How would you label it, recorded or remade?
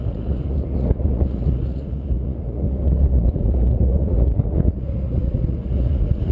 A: remade